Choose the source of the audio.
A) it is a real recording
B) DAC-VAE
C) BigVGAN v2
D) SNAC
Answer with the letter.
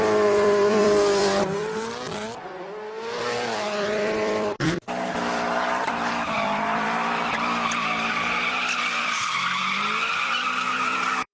C